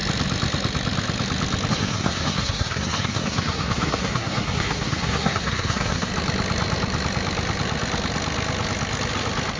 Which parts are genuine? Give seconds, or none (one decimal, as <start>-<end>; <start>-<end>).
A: 0.0-1.7; 6.1-9.6